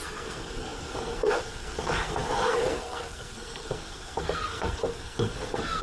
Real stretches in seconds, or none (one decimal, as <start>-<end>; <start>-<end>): none